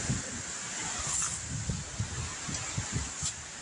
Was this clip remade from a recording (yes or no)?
no